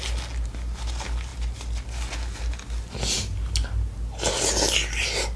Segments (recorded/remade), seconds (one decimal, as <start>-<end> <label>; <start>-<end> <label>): 0.0-5.4 recorded